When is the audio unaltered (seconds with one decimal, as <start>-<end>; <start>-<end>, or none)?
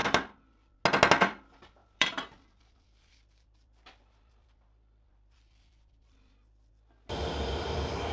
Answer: 0.8-1.8; 6.7-8.1